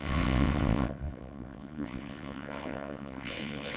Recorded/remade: remade